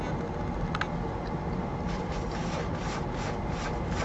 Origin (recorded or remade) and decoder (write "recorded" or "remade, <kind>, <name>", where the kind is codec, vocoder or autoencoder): recorded